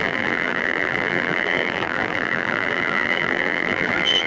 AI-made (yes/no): yes